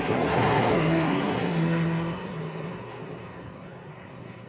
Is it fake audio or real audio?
fake